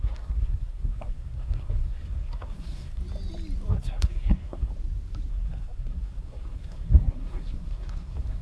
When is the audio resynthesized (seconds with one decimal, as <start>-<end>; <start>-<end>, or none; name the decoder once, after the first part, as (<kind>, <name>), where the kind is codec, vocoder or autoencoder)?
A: 0.0-3.0 (codec, SNAC); 3.7-4.7; 5.3-8.4